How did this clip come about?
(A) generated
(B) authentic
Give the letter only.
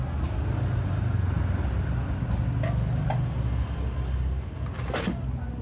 B